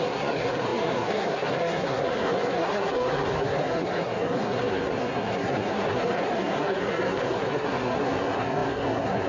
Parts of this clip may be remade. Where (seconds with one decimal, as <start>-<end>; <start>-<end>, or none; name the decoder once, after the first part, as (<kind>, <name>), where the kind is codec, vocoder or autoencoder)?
0.0-9.3 (codec, SNAC)